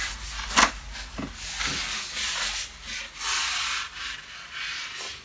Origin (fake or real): real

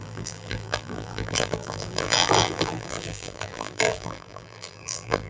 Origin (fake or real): fake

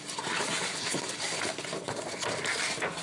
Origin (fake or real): real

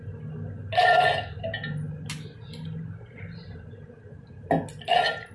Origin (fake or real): real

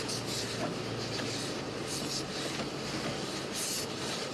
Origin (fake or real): real